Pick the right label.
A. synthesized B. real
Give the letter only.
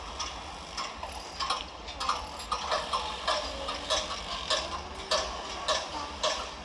B